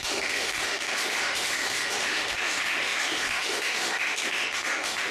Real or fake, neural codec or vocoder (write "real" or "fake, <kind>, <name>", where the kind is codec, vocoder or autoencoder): fake, autoencoder, DAC-VAE